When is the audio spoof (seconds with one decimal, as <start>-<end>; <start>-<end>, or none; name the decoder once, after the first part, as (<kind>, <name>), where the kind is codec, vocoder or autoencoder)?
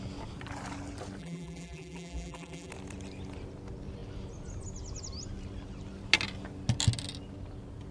1.2-2.7 (vocoder, BigVGAN v2)